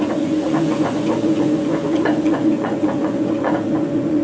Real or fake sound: fake